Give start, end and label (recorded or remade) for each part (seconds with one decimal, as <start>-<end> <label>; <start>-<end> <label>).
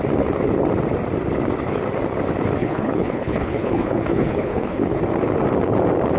0.0-2.6 recorded; 2.6-5.0 remade; 5.0-6.2 recorded